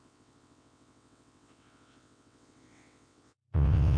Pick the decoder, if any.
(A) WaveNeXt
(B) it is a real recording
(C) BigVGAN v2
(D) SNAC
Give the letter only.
A